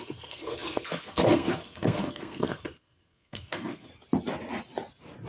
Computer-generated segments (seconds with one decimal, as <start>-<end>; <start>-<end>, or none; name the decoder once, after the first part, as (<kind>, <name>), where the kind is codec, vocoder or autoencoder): 0.0-3.9 (codec, SNAC)